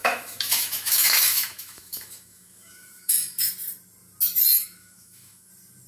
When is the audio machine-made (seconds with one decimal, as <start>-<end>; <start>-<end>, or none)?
0.0-3.5; 4.5-5.5